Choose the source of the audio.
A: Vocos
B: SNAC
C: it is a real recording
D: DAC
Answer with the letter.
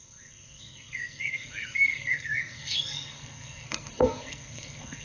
B